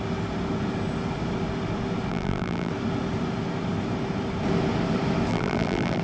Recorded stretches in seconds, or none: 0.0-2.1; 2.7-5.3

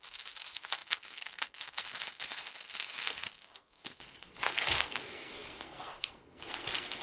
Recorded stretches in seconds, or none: none

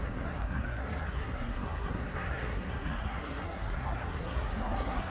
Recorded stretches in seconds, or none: none

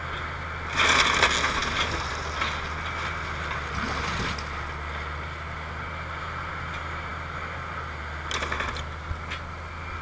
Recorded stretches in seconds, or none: 0.0-10.0

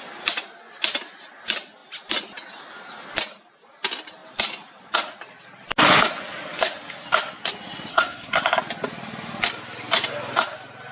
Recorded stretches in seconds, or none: 0.0-7.9; 8.4-10.9

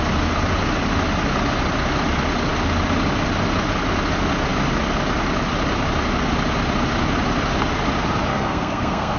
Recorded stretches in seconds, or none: 0.0-8.3

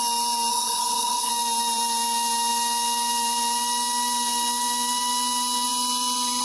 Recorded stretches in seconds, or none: 0.0-0.5; 1.3-6.4

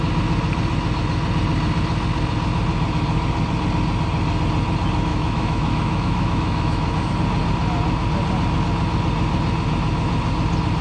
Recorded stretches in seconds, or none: 0.0-5.1; 7.1-10.8